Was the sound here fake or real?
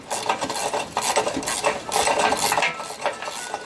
real